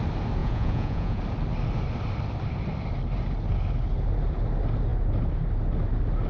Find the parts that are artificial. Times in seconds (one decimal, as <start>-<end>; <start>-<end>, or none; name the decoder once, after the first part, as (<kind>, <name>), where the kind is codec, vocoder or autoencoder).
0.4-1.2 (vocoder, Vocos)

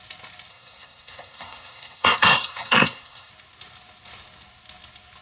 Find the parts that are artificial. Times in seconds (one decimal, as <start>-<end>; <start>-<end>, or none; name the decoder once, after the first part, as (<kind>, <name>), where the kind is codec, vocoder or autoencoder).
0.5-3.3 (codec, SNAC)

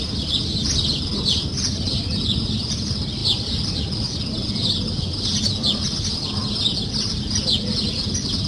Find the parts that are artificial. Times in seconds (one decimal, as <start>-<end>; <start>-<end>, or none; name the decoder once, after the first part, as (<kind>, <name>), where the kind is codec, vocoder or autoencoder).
none